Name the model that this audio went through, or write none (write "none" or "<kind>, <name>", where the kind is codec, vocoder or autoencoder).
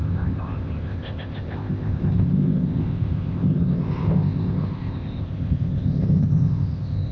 codec, ZipCodec